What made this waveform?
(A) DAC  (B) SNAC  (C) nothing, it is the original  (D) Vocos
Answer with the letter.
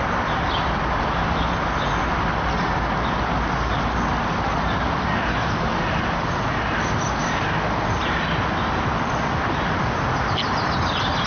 C